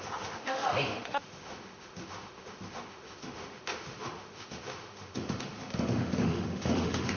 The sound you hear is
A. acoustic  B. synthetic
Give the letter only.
B